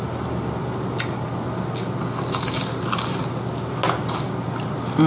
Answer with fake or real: real